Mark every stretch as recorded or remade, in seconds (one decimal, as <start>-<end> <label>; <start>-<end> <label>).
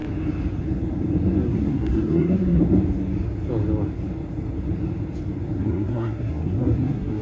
0.0-1.4 recorded; 1.4-2.6 remade; 2.6-5.6 recorded; 5.6-7.2 remade